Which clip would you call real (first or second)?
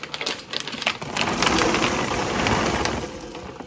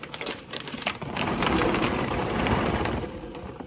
first